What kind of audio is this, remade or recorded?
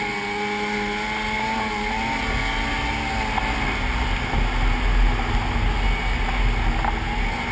recorded